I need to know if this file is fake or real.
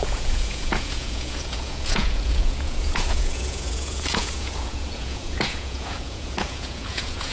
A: fake